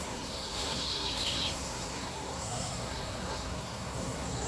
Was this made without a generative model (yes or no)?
no